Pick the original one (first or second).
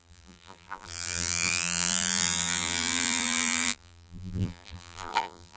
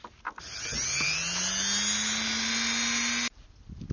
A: second